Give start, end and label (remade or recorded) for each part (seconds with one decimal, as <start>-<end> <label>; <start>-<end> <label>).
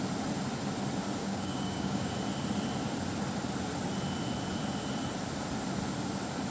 0.0-1.2 recorded; 1.2-2.1 remade; 2.1-6.5 recorded